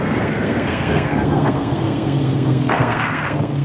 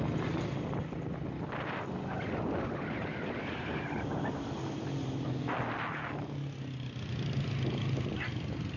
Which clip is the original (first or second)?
second